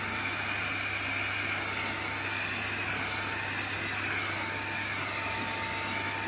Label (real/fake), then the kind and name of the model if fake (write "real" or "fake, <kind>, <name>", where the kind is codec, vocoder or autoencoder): real